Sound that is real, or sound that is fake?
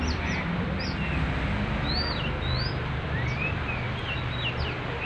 real